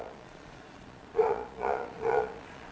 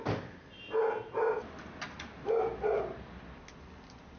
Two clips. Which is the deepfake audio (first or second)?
first